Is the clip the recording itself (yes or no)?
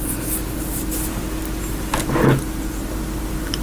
yes